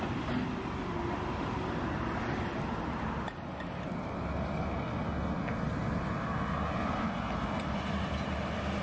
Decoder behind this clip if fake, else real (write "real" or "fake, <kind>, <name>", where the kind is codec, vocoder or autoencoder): real